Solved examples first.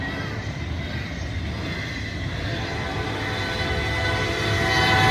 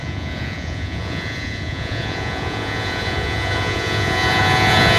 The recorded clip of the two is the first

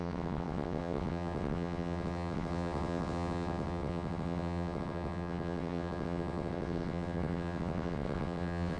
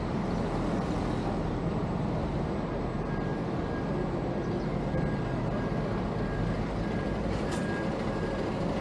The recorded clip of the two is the second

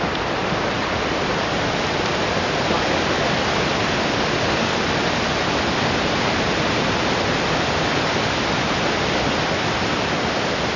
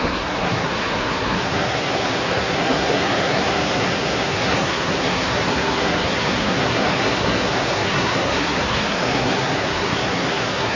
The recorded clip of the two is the first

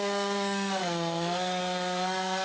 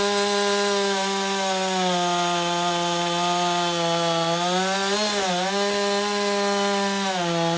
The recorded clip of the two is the second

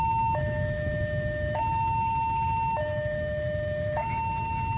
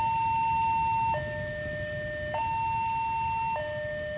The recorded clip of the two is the second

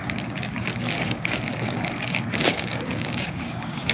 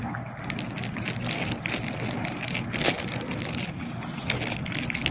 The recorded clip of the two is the second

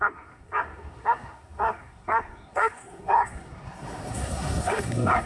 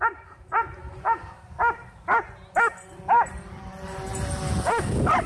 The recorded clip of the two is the second